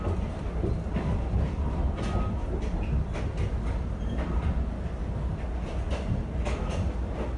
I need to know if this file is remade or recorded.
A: recorded